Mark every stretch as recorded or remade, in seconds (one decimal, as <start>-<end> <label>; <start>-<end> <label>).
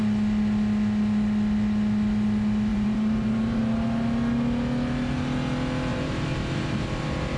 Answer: 0.0-2.7 recorded; 2.7-3.6 remade; 3.6-5.9 recorded; 5.9-6.5 remade; 6.5-7.4 recorded